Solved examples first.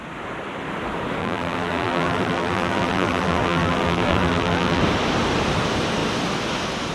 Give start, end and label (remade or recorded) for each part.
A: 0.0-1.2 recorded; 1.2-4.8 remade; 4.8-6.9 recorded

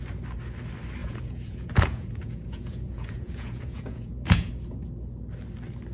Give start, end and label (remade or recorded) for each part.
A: 0.0-1.0 recorded; 1.0-4.5 remade; 4.5-5.9 recorded

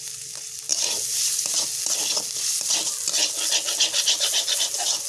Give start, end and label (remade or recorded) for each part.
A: 0.0-5.1 recorded

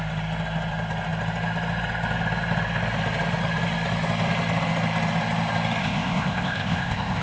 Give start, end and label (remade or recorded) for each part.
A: 0.0-5.8 recorded; 5.8-7.2 remade

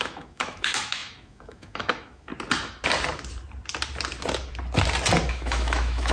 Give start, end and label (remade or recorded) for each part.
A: 0.0-2.3 remade; 2.3-5.3 recorded; 5.3-6.1 remade

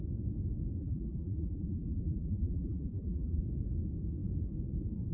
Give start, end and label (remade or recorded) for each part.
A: 0.0-0.8 recorded; 0.8-3.4 remade; 3.4-5.1 recorded